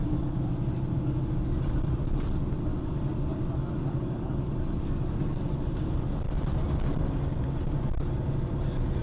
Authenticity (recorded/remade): recorded